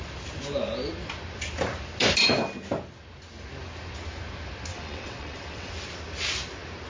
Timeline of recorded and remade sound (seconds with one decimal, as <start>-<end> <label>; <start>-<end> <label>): 0.0-4.7 recorded; 4.7-5.7 remade; 5.7-6.9 recorded